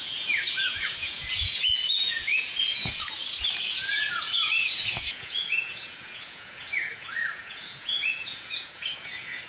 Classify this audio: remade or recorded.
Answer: remade